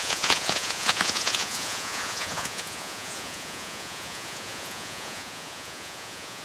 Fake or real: fake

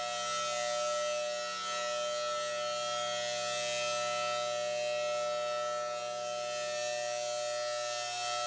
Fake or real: real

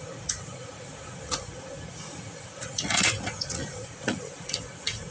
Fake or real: fake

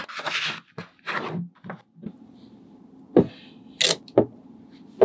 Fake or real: real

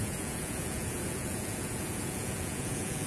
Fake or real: fake